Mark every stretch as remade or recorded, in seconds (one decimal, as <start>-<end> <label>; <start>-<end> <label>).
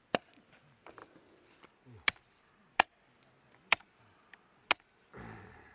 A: 0.0-5.7 recorded